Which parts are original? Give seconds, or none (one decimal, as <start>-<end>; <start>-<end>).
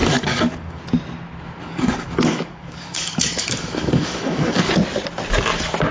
0.8-1.6; 4.7-5.9